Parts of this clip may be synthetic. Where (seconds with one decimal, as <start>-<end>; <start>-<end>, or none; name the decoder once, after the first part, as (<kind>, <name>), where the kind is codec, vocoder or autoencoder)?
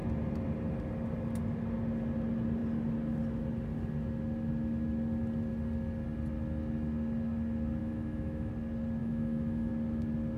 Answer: 7.8-8.5 (autoencoder, DAC-VAE); 9.0-9.7